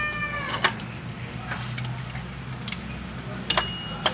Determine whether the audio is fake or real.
real